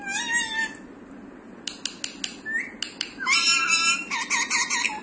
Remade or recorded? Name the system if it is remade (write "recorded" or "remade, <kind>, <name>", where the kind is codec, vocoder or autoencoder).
recorded